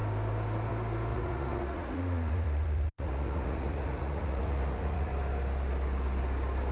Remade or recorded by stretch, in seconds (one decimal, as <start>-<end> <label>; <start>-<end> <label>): 0.0-1.1 recorded; 1.1-5.1 remade; 5.1-6.7 recorded